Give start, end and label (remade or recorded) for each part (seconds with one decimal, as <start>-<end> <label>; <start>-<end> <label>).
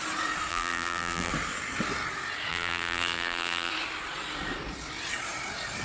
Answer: 0.0-0.5 recorded; 0.5-1.3 remade; 1.3-2.5 recorded; 2.5-3.7 remade; 3.7-5.8 recorded